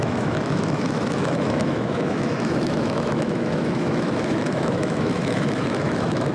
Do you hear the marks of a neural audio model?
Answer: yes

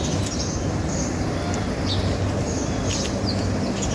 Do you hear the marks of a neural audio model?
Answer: no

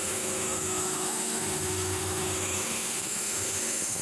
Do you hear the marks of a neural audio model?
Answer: yes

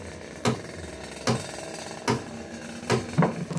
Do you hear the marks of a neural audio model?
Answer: no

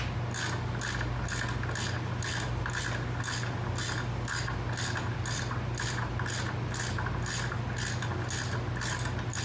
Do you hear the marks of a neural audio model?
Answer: no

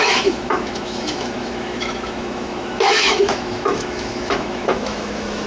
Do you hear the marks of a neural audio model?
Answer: yes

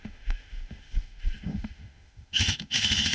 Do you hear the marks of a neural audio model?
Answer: yes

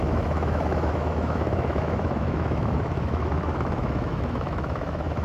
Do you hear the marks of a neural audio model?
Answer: yes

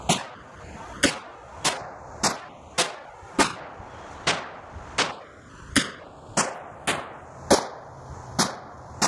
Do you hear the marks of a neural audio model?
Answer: no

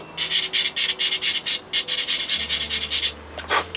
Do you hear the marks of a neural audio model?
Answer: no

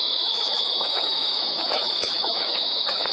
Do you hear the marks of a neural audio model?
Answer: yes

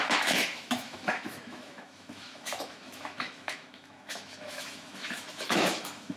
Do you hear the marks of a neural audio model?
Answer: yes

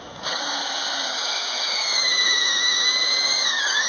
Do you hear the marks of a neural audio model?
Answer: yes